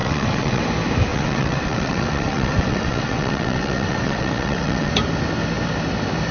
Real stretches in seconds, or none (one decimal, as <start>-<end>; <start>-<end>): 0.6-1.1; 4.9-6.3